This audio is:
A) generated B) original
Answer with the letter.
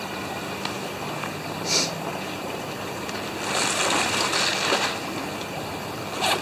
B